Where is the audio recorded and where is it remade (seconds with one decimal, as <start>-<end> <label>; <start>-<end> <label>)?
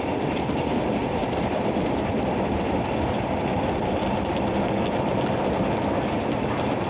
0.0-1.2 recorded; 1.2-5.3 remade; 5.3-6.9 recorded